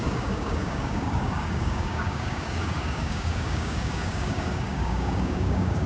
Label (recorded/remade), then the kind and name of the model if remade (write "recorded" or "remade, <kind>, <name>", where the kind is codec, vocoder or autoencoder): remade, codec, DAC